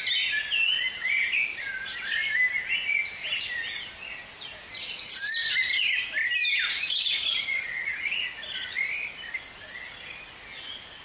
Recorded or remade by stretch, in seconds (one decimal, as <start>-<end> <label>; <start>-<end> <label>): 0.0-6.4 recorded; 6.4-8.8 remade; 8.8-11.0 recorded